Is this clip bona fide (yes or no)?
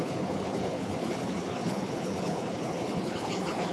no